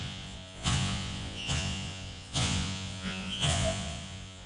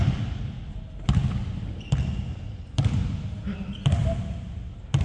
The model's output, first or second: first